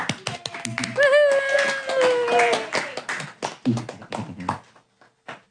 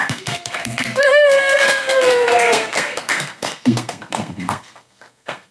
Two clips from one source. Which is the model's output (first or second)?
second